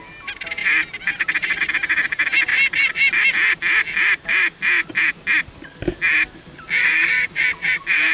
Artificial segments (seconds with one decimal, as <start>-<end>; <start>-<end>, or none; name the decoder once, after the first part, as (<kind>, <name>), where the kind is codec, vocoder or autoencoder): 6.8-7.4 (codec, DAC)